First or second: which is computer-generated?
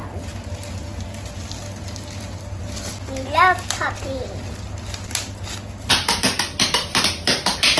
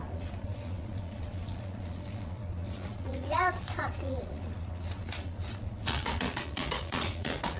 second